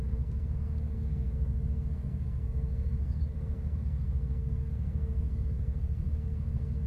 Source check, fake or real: fake